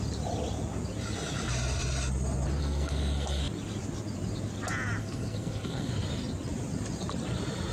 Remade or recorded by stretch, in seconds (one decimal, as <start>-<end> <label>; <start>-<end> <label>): 0.0-2.6 recorded; 2.6-3.4 remade; 3.4-5.0 recorded; 5.0-5.9 remade; 5.9-7.7 recorded